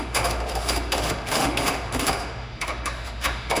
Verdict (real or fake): fake